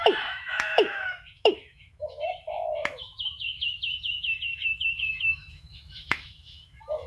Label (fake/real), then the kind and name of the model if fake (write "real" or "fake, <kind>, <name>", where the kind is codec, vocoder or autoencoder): fake, autoencoder, DAC-VAE